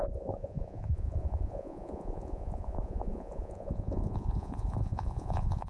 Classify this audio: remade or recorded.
remade